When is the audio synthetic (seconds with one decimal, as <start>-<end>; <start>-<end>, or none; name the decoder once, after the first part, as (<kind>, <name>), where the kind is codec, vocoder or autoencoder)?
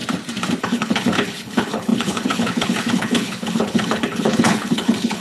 0.6-5.2 (codec, HILCodec)